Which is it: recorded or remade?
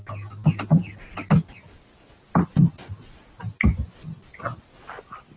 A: recorded